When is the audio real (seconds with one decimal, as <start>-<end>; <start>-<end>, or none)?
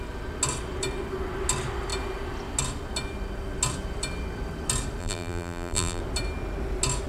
0.0-5.0; 6.0-7.1